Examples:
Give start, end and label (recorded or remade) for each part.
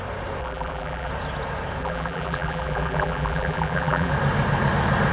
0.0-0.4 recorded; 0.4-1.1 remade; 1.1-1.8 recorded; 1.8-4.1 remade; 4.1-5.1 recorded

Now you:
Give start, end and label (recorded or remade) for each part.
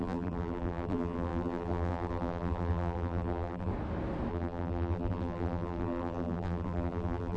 0.0-3.7 remade; 3.7-4.3 recorded; 4.3-7.4 remade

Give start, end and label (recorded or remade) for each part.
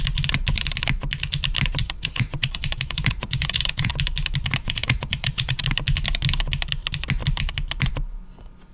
0.0-1.8 recorded; 1.8-3.9 remade; 3.9-4.6 recorded; 4.6-5.6 remade; 5.6-8.7 recorded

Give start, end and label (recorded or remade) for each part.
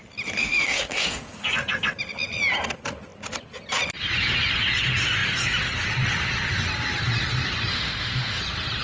0.0-0.4 recorded; 0.4-1.3 remade; 1.3-7.7 recorded; 7.7-8.4 remade; 8.4-8.8 recorded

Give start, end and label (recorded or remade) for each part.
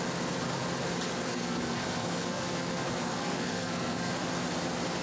0.0-1.3 recorded; 1.3-4.1 remade; 4.1-5.0 recorded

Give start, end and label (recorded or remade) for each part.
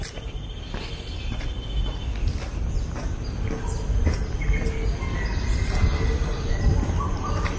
0.0-5.9 recorded; 5.9-7.1 remade; 7.1-7.6 recorded